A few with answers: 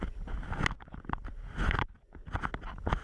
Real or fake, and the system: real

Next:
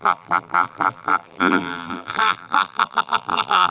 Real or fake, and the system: fake, vocoder, BigVGAN v2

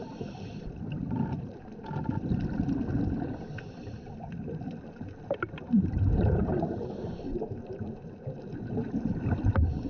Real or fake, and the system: fake, vocoder, BigVGAN v2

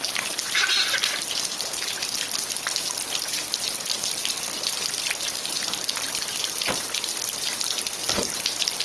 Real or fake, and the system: real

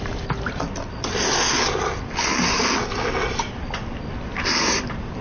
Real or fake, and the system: real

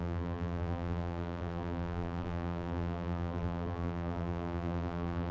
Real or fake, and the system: fake, vocoder, BigVGAN v2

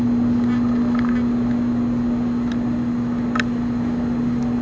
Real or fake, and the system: real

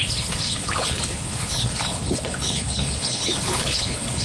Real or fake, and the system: fake, codec, HILCodec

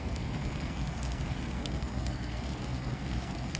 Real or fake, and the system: fake, codec, SNAC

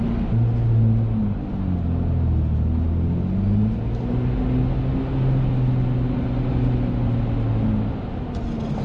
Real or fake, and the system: real